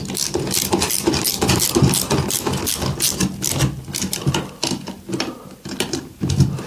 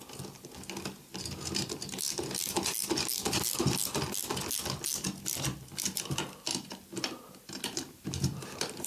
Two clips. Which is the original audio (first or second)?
second